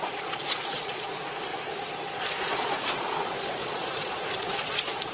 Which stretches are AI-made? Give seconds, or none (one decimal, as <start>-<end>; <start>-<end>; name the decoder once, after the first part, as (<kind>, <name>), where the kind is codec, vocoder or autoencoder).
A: 0.0-1.5 (vocoder, Vocos); 2.4-5.1